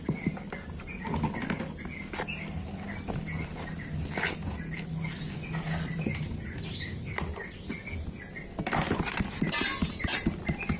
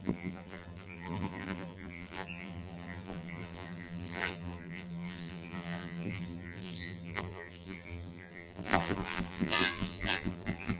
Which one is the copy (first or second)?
second